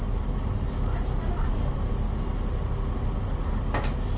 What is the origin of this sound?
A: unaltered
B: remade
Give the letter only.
A